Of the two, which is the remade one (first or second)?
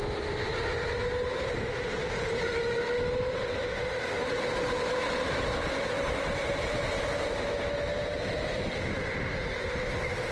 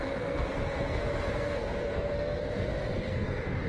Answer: second